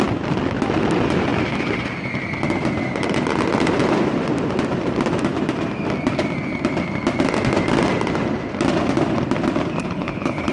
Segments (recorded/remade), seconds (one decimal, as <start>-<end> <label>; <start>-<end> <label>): 0.0-9.8 recorded; 9.8-10.5 remade